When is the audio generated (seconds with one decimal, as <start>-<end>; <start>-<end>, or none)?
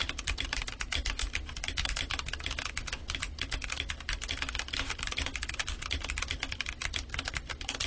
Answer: none